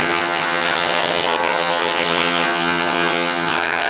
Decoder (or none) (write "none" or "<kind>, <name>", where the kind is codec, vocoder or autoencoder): vocoder, HiFi-GAN